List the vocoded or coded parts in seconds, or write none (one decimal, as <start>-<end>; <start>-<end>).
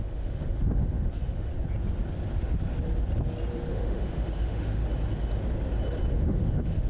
0.0-1.5; 3.7-4.8; 6.1-6.9